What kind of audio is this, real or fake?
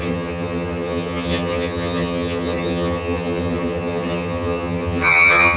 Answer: fake